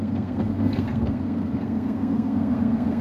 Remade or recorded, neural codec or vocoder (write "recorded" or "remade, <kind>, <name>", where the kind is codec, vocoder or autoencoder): remade, codec, SNAC